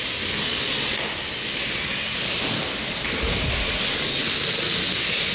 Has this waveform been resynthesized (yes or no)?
no